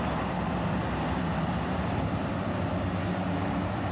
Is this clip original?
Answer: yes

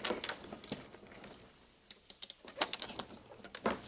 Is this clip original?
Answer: yes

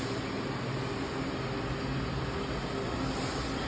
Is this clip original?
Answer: yes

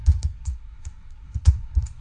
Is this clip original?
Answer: no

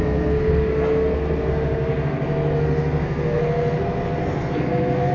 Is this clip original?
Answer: no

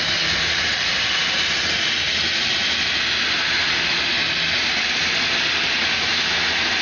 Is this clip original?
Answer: yes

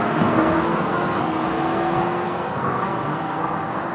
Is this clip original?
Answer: no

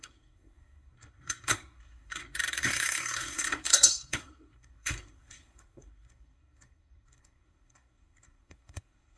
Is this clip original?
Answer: no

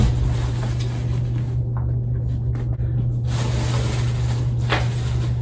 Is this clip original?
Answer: yes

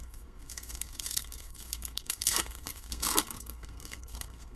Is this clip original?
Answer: no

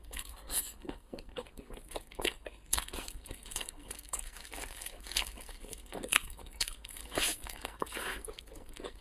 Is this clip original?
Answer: no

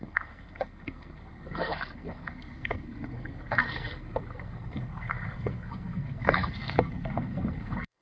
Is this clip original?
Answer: no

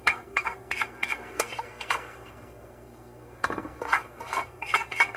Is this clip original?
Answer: no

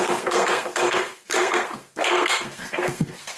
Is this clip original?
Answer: no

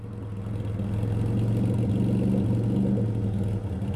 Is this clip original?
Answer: yes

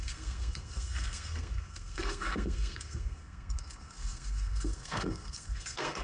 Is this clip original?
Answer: no